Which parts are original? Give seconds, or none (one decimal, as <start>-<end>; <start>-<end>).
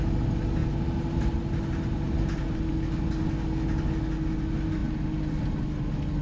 0.0-6.2